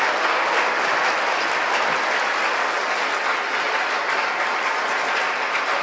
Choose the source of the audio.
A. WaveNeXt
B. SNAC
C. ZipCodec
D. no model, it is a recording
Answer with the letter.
D